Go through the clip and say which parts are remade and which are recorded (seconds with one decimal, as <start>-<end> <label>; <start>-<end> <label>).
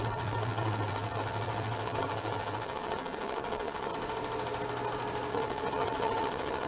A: 0.0-3.9 remade; 3.9-5.3 recorded; 5.3-6.7 remade